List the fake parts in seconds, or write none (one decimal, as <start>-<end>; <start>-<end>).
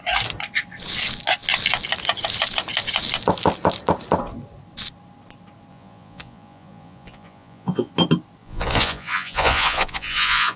5.7-7.9; 8.4-10.6